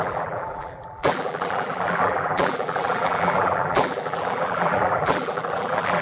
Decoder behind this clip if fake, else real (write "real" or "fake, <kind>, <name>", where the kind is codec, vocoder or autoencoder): fake, vocoder, BigVGAN v2